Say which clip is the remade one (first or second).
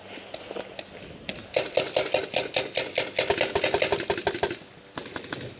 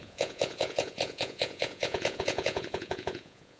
second